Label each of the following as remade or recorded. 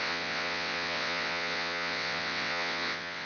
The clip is remade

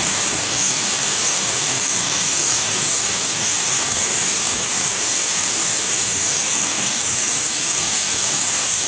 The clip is remade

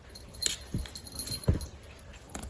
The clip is recorded